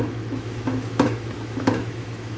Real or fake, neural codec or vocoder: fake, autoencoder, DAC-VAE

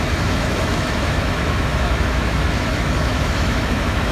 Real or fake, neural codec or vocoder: fake, autoencoder, DAC-VAE